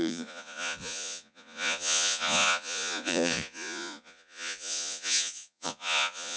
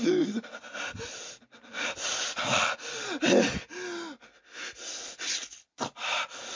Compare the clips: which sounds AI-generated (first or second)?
first